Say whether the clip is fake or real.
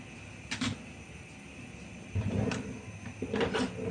real